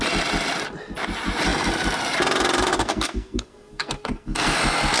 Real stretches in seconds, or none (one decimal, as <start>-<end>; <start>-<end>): 0.0-2.7; 4.6-5.0